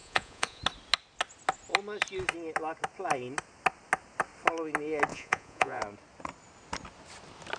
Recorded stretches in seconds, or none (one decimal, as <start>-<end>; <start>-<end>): 0.6-5.1; 5.8-7.6